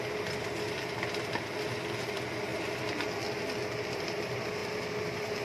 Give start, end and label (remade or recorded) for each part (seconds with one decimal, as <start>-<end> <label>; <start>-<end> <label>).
0.0-4.6 recorded; 4.6-5.4 remade